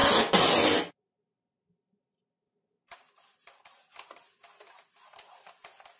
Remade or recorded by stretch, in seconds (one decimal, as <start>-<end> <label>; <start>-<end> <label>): 0.0-6.0 recorded

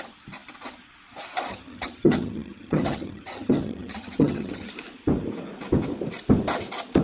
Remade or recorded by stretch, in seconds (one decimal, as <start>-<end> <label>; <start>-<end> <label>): 0.0-1.5 recorded; 1.5-4.7 remade; 4.7-7.0 recorded

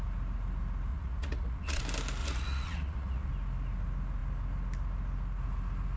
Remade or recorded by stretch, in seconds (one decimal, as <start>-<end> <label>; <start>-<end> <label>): 0.0-0.9 recorded; 0.9-1.8 remade; 1.8-2.2 recorded; 2.2-3.3 remade; 3.3-6.0 recorded

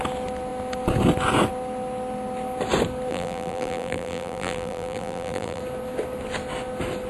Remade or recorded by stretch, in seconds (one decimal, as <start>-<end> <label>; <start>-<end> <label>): 0.0-3.1 recorded; 3.1-5.6 remade; 5.6-7.1 recorded